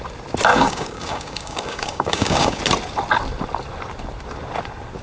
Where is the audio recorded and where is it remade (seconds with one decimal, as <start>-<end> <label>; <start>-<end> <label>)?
0.0-0.5 recorded; 0.5-2.6 remade; 2.6-5.0 recorded